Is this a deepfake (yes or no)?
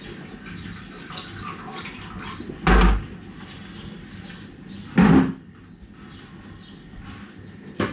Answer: no